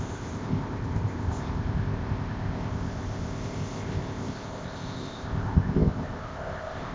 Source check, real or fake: fake